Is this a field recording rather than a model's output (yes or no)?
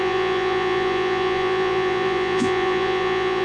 no